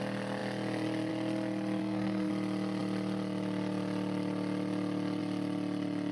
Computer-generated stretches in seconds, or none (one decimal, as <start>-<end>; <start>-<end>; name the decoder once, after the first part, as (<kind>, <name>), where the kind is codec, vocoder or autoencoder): 1.8-2.3 (codec, SNAC)